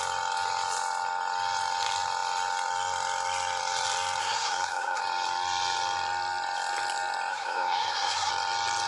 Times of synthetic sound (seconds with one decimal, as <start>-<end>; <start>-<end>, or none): 4.2-5.0; 7.3-8.3